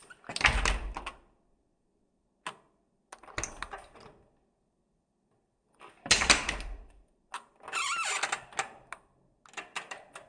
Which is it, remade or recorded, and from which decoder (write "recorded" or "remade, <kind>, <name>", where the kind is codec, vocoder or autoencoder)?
recorded